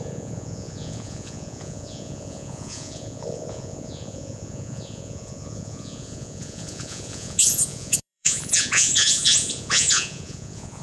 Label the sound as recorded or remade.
remade